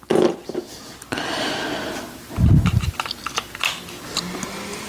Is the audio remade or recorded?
recorded